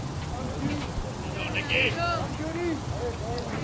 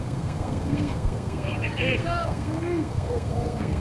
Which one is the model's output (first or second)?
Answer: second